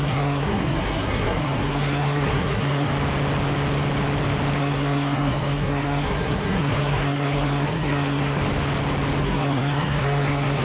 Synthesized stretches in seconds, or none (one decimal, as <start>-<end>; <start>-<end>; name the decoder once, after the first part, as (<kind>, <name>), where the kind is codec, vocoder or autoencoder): 0.0-2.9 (codec, SNAC); 4.6-8.4; 9.2-10.6